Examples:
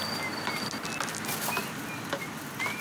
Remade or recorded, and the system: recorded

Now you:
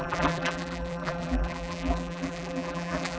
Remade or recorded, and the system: remade, vocoder, BigVGAN v2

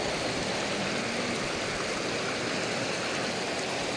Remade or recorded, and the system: recorded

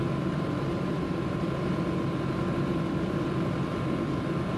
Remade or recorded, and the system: remade, vocoder, BigVGAN v2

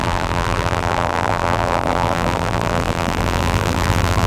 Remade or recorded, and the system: remade, vocoder, BigVGAN v2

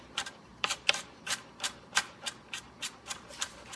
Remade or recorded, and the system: remade, vocoder, BigVGAN v2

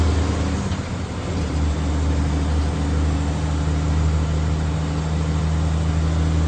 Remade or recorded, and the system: recorded